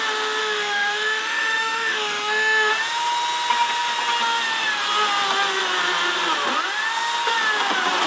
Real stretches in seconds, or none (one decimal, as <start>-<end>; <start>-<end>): 0.0-0.4; 2.7-8.1